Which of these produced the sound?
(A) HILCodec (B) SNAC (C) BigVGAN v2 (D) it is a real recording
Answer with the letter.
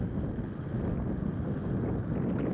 D